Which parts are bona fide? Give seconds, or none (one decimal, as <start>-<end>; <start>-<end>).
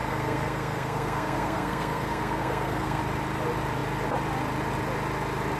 3.0-5.6